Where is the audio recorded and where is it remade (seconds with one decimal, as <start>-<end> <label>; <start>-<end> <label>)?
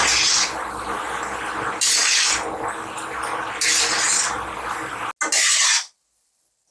0.0-6.7 recorded